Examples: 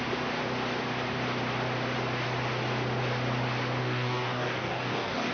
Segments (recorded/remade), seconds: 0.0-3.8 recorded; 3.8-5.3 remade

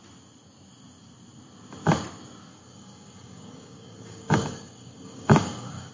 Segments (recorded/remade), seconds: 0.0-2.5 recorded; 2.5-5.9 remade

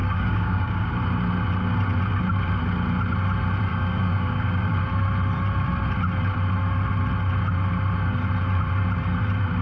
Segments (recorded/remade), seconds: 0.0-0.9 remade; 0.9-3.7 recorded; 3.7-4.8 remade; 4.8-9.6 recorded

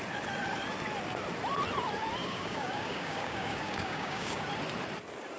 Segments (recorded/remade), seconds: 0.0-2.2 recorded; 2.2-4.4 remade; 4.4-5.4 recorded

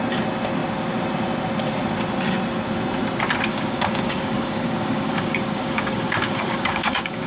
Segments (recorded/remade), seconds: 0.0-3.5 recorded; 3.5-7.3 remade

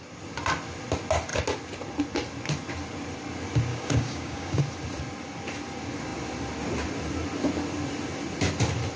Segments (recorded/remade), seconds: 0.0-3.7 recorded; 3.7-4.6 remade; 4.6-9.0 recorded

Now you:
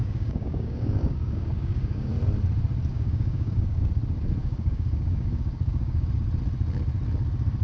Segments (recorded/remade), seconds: 0.0-2.1 remade; 2.1-2.9 recorded; 2.9-3.9 remade; 3.9-4.4 recorded; 4.4-6.1 remade; 6.1-7.6 recorded